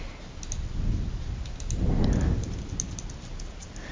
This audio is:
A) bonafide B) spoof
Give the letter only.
A